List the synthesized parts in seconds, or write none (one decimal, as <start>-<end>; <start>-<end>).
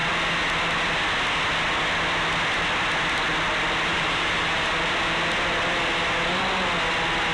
3.9-4.7